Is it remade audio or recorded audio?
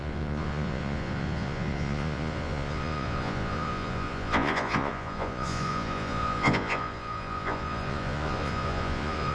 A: remade